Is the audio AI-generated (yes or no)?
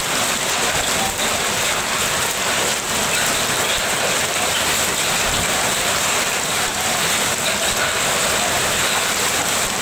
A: yes